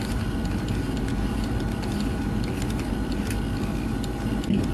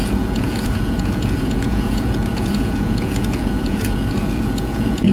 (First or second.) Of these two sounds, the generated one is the second